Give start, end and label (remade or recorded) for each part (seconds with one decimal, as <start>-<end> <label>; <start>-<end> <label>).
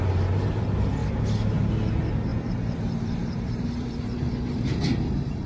0.0-2.3 recorded; 2.3-4.1 remade; 4.1-5.5 recorded